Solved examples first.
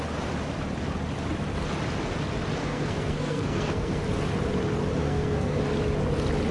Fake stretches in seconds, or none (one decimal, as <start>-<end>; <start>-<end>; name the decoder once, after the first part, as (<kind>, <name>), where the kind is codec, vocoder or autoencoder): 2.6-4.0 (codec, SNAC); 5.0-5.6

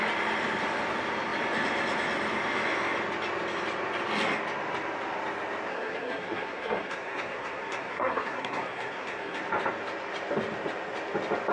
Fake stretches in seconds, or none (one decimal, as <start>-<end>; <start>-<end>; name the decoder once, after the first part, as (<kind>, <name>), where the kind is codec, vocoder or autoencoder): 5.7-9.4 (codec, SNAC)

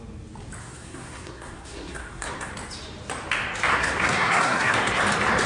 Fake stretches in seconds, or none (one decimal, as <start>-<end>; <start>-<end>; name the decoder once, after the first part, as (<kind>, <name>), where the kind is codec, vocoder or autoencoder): 0.6-2.5 (codec, SNAC); 3.7-5.0

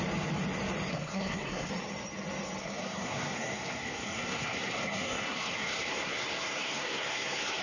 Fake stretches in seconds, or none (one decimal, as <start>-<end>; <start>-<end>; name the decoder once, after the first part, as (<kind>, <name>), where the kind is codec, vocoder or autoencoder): 0.9-1.7 (codec, SNAC); 2.6-7.6